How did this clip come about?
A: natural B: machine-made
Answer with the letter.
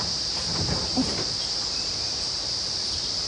B